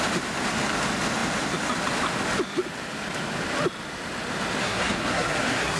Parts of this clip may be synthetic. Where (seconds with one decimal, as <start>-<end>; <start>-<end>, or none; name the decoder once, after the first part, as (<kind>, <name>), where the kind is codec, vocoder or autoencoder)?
4.6-5.8 (codec, SNAC)